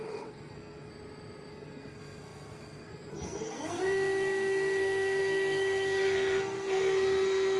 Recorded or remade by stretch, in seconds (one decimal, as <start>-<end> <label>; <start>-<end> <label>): 0.0-0.9 remade; 0.9-1.5 recorded; 1.5-7.6 remade